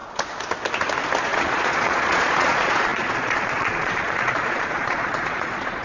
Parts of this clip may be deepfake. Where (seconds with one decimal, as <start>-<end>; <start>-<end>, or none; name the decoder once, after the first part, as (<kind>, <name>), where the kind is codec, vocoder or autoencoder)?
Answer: 1.2-5.8 (vocoder, Vocos)